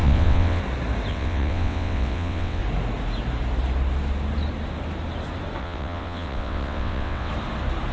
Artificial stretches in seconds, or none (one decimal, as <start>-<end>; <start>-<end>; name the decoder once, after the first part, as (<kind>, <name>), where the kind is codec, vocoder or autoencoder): 0.0-0.6 (vocoder, WaveNeXt); 1.1-2.6; 5.6-7.3

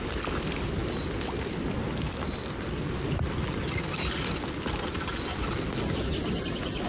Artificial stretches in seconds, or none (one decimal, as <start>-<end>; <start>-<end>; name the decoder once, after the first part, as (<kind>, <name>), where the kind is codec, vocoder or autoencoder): none

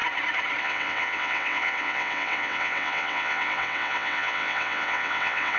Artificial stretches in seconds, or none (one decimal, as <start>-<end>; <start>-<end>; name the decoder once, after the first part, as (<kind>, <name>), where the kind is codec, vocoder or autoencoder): 0.6-5.6 (vocoder, WaveNeXt)

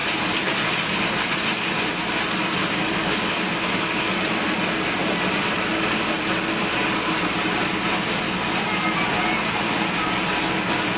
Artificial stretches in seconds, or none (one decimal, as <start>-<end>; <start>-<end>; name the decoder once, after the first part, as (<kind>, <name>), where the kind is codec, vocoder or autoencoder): none

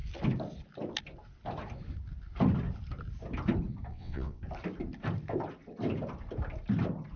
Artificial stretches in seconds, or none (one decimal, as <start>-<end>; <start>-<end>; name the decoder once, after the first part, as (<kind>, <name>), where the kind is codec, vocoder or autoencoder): 3.9-4.4 (vocoder, WaveNeXt)

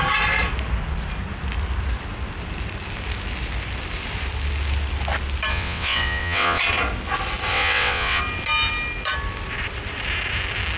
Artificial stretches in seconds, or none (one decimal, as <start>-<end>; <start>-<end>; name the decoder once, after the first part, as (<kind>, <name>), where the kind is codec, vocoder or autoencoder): 5.5-6.6 (vocoder, WaveNeXt); 7.5-8.2

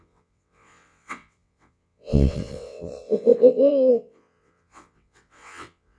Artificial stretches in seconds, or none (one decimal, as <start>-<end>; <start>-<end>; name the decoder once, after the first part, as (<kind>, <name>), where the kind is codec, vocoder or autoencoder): 0.0-6.0 (vocoder, WaveNeXt)